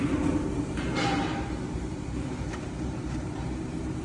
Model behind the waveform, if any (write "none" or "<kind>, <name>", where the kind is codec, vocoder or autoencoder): vocoder, BigVGAN v2